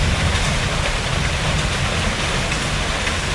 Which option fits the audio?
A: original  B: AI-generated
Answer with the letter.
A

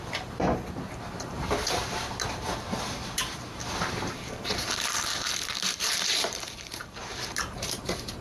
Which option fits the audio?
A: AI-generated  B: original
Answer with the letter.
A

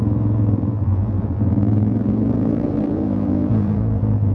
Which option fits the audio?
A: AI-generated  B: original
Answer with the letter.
A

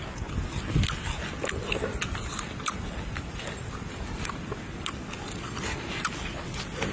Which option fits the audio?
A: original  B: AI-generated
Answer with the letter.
A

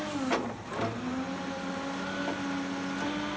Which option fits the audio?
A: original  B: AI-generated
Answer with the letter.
A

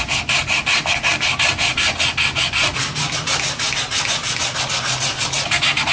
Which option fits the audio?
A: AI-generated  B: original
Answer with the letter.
B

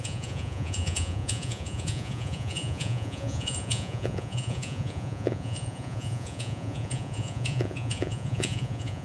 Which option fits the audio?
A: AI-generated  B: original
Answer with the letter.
A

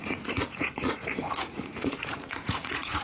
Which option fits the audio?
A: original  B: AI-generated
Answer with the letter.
B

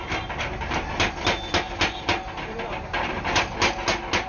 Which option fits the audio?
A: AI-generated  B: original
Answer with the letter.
B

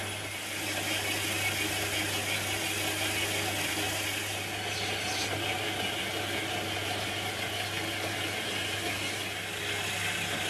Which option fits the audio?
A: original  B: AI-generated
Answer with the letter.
A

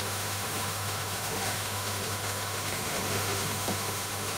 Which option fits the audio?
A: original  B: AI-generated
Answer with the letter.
B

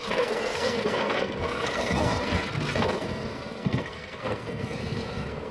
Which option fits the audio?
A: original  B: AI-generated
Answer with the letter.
B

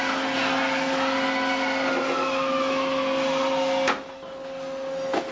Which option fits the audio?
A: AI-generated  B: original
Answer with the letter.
B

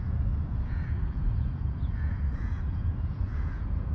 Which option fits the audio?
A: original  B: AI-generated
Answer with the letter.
B